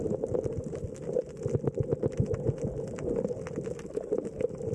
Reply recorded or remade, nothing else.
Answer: recorded